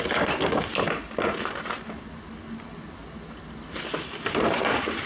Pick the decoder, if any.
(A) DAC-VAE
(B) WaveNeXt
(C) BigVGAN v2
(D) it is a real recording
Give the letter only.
D